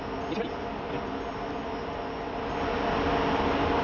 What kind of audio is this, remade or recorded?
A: recorded